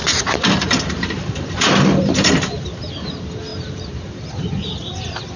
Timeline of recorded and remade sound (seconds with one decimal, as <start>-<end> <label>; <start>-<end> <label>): 0.0-1.7 remade; 1.7-3.5 recorded; 3.5-4.3 remade; 4.3-5.4 recorded